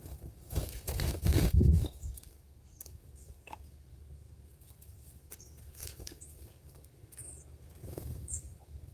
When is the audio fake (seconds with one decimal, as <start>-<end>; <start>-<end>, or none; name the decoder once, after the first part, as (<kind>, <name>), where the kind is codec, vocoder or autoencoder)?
0.0-8.9 (codec, SNAC)